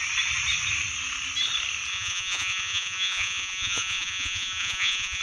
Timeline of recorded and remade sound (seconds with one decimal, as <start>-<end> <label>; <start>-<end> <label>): 0.0-1.9 recorded; 1.9-5.2 remade